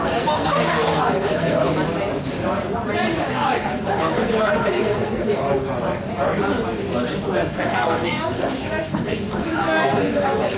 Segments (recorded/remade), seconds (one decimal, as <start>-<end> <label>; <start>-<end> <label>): 0.0-1.6 remade; 1.6-3.3 recorded; 3.3-5.4 remade; 5.4-7.4 recorded; 7.4-10.6 remade